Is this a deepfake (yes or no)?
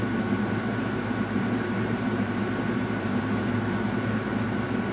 yes